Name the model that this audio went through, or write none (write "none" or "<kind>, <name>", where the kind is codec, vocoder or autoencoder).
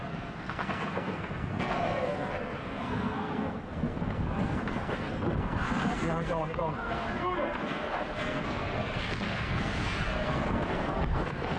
codec, SNAC